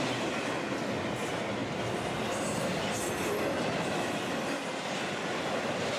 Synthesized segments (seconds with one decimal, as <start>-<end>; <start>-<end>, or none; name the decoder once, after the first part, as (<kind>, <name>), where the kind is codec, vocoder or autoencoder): none